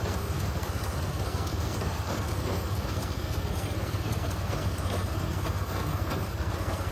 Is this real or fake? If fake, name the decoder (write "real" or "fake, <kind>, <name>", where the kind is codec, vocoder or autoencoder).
fake, codec, SNAC